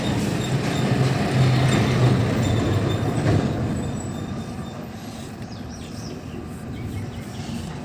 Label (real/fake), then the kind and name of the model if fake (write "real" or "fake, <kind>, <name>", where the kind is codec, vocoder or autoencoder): real